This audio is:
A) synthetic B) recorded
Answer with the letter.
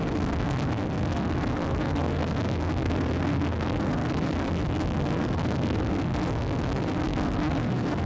A